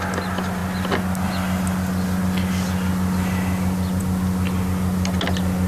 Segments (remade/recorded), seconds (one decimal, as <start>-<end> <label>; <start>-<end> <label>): 0.0-5.7 recorded